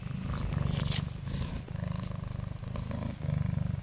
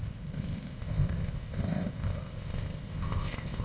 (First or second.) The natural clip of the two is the first